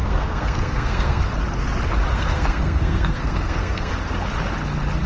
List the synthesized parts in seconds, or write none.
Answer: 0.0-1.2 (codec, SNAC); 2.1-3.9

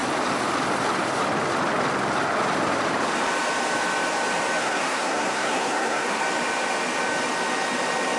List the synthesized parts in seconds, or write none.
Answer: 4.6-6.2 (codec, SNAC)

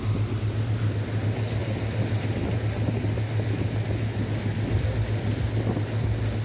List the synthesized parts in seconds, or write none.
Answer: none

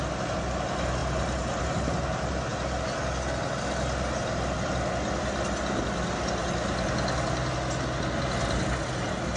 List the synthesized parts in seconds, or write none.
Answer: none

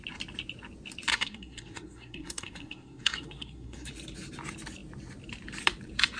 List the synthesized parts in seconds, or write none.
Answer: 1.1-3.9 (codec, SNAC)

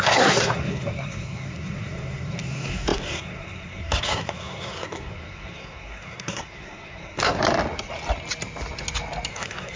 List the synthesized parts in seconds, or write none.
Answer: 0.0-7.4 (codec, SNAC); 9.3-9.8

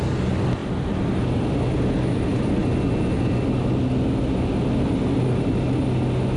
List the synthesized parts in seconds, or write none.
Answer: none

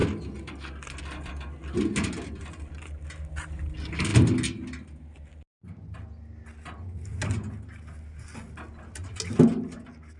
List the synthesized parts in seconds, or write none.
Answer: none